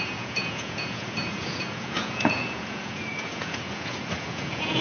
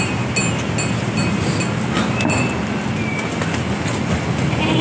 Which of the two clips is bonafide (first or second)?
second